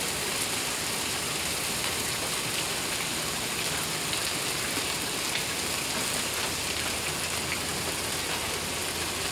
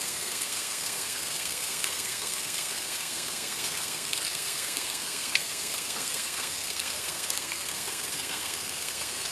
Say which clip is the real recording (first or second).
first